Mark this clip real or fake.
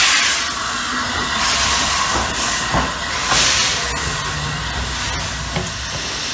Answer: real